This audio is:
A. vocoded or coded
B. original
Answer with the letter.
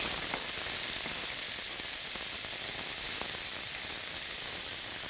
B